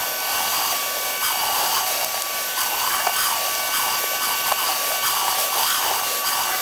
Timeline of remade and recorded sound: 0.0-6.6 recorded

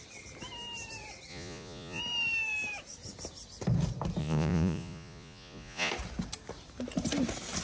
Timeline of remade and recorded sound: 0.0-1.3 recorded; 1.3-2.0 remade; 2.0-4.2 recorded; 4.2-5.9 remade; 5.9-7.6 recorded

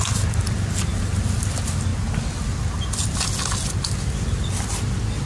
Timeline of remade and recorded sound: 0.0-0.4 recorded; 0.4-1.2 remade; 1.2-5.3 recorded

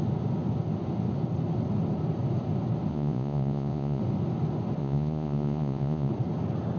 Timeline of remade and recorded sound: 0.0-2.9 recorded; 2.9-4.0 remade; 4.0-4.8 recorded; 4.8-6.1 remade; 6.1-6.8 recorded